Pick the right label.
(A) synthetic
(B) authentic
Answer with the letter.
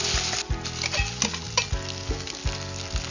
B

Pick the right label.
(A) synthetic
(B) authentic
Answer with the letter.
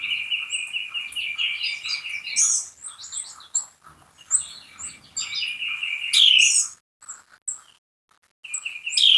B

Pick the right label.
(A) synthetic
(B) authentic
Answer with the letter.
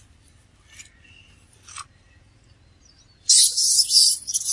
B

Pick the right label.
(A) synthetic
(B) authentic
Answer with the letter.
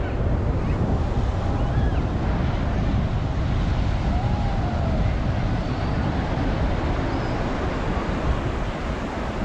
B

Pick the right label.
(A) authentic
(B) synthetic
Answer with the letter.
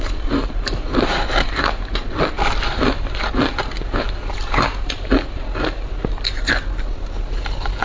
A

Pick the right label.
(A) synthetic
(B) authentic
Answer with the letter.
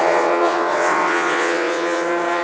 A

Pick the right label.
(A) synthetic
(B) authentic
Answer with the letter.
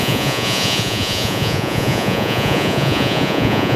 A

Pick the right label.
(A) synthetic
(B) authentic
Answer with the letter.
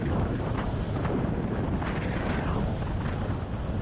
B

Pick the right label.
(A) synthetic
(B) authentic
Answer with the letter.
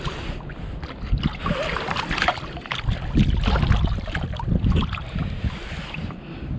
B